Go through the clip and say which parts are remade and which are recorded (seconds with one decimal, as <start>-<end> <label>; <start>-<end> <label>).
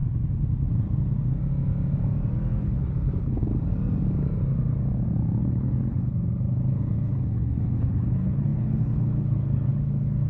0.0-2.6 recorded; 2.6-3.4 remade; 3.4-5.4 recorded; 5.4-10.3 remade